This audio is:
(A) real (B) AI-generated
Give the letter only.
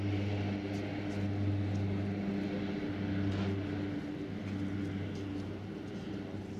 A